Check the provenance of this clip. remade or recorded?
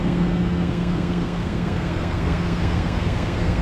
remade